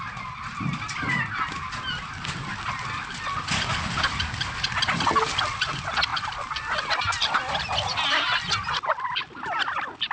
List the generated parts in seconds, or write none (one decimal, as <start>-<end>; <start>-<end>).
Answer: none